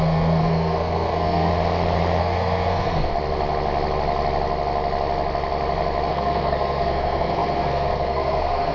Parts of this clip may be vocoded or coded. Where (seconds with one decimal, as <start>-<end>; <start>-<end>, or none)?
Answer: 0.0-1.5; 2.2-3.1; 6.1-8.7